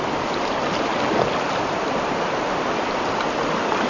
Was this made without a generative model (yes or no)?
yes